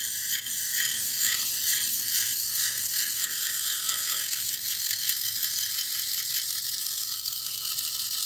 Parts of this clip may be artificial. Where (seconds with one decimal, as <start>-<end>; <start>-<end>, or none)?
0.9-1.5; 1.9-5.7; 6.8-7.7